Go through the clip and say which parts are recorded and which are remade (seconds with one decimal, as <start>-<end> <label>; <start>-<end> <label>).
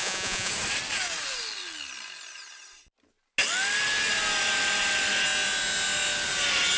0.0-0.5 remade; 0.5-6.8 recorded